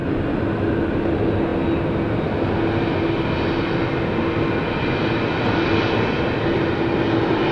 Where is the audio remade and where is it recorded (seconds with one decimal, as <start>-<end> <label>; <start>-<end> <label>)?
0.0-7.5 recorded